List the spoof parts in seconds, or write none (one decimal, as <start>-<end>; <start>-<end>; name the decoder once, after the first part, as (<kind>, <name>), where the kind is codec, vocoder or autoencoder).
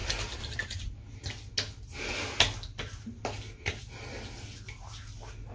none